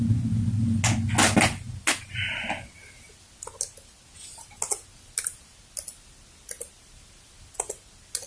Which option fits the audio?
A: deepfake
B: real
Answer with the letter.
B